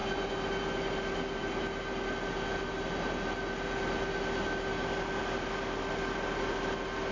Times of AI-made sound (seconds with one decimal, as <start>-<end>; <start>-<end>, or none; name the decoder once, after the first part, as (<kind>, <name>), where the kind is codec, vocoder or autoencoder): none